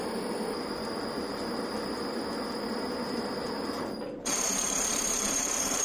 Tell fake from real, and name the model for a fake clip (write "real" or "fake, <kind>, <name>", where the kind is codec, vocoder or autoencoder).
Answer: fake, vocoder, BigVGAN v2